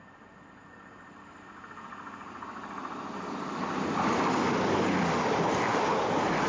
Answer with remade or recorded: recorded